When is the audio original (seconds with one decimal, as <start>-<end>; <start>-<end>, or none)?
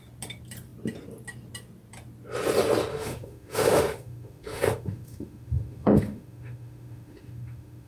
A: 0.0-2.9